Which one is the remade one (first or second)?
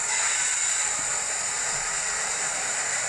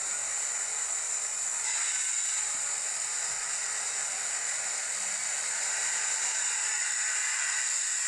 first